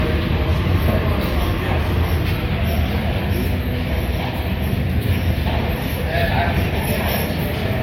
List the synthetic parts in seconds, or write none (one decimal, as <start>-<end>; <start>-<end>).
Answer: none